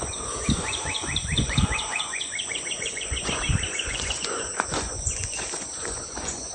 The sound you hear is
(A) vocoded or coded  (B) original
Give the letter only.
A